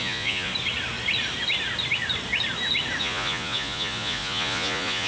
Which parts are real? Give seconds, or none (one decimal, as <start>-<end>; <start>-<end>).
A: 0.5-3.0